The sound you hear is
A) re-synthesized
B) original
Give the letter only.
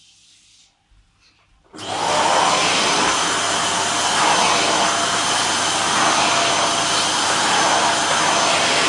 B